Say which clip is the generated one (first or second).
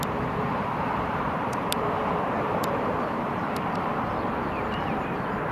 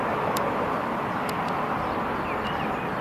first